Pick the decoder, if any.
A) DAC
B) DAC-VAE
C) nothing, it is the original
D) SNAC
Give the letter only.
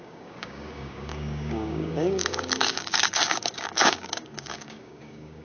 A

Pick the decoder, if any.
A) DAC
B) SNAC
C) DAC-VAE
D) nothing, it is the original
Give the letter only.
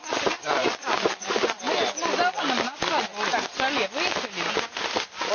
D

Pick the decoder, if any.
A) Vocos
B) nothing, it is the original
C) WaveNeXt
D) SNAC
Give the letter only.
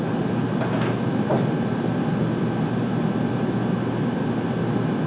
B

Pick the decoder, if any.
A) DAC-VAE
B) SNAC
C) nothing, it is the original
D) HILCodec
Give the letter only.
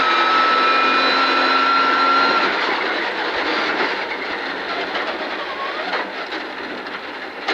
C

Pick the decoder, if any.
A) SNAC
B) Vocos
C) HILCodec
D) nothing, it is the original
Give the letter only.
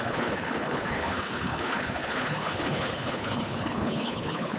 C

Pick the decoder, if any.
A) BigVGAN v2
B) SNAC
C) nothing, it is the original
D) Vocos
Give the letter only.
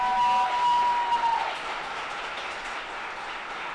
C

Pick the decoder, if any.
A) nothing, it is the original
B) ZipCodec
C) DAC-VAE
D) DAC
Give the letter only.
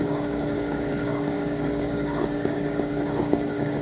D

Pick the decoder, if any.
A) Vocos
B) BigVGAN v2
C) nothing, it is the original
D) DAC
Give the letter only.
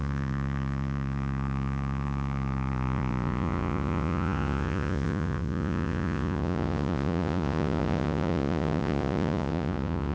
A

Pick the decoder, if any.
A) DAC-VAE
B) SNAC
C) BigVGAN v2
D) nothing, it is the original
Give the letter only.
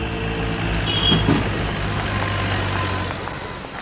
D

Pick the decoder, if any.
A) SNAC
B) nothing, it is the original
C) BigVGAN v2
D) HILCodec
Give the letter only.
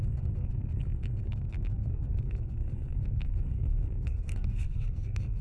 A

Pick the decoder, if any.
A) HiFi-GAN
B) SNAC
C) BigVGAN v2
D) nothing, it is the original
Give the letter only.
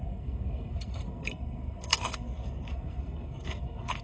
B